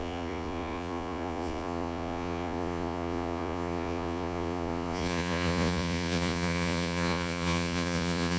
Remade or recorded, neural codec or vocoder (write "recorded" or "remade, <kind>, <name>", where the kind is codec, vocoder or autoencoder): remade, vocoder, Vocos